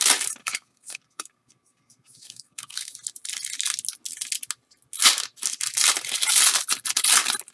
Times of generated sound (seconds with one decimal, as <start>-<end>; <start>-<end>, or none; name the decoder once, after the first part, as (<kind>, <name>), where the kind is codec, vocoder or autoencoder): 0.4-2.9 (codec, SNAC)

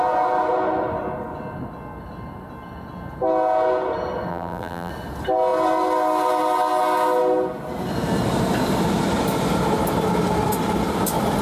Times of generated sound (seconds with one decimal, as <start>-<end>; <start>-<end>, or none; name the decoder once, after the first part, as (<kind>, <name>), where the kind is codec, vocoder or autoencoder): 4.3-4.9 (vocoder, BigVGAN v2)